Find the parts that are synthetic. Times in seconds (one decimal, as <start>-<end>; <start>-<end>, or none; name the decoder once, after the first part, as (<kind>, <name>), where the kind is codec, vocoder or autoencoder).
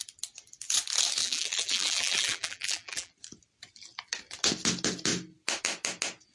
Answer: 1.2-3.1 (vocoder, BigVGAN v2)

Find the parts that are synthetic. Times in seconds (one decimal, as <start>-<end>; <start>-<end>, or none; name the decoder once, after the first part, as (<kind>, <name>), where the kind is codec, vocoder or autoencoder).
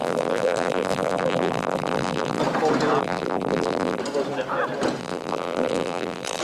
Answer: 0.0-2.4 (vocoder, BigVGAN v2); 3.0-4.0; 5.0-6.4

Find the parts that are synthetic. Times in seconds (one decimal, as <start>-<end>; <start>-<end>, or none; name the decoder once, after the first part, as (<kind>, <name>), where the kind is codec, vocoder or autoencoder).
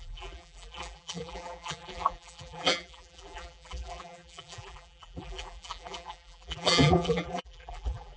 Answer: 0.0-8.2 (vocoder, BigVGAN v2)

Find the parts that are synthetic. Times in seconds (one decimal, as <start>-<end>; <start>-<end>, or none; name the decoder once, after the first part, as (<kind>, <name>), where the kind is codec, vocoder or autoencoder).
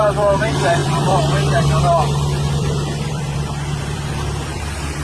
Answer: 0.0-5.0 (vocoder, BigVGAN v2)